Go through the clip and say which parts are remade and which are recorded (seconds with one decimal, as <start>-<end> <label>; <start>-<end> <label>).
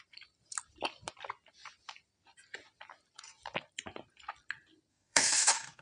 0.0-4.9 recorded; 4.9-5.8 remade